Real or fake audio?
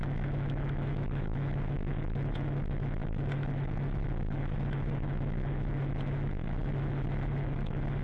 fake